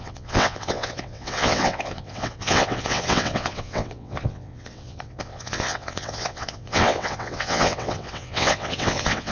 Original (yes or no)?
no